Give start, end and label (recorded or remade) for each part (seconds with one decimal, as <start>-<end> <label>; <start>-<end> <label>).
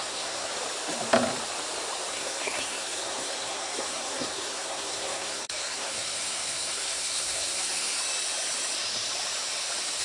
0.0-0.5 remade; 0.5-2.1 recorded; 2.1-8.0 remade; 8.0-10.0 recorded